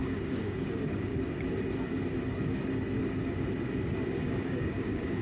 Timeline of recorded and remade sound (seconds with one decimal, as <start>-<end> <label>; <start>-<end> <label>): 0.0-1.1 remade; 1.1-4.2 recorded; 4.2-5.2 remade